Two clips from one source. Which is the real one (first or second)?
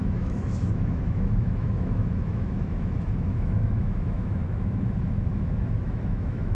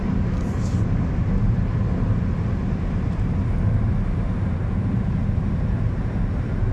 second